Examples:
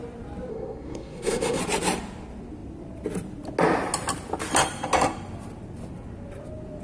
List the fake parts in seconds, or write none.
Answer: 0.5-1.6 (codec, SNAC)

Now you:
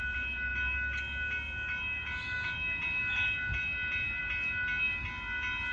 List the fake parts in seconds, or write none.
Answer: none

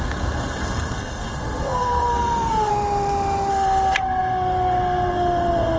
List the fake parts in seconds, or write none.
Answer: 0.0-2.7 (codec, SNAC); 3.5-5.8

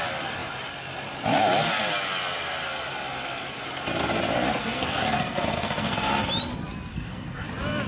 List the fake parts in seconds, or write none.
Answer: 4.6-6.2 (codec, SNAC); 6.9-7.5

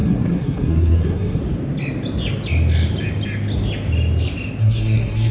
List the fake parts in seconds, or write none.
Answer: 0.0-1.4 (codec, SNAC); 4.6-5.3

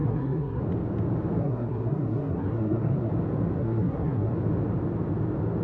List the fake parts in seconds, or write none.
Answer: 0.0-0.6 (codec, SNAC); 1.4-3.1; 3.6-4.3

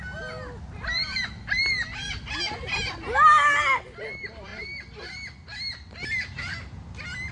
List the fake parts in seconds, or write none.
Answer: none